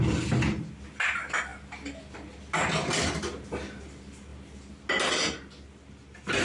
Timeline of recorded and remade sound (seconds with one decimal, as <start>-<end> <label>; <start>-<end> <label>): 0.0-6.4 recorded

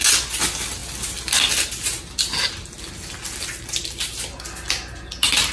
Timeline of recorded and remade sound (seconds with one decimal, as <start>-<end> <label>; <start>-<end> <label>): 0.0-5.5 recorded

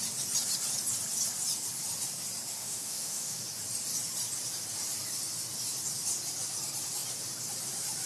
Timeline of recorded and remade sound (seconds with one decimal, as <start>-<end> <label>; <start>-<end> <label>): 0.0-2.6 recorded; 2.6-3.4 remade; 3.4-8.1 recorded

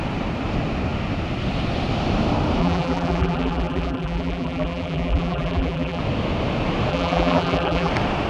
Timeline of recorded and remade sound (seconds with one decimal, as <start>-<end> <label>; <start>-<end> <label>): 0.0-2.6 recorded; 2.6-6.0 remade; 6.0-6.9 recorded; 6.9-7.9 remade; 7.9-8.3 recorded